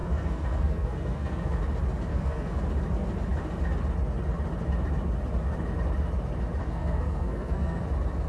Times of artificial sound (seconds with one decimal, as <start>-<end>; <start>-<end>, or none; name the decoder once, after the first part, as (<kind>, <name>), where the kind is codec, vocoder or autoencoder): 0.0-1.6 (codec, SNAC); 2.1-2.6; 6.6-7.8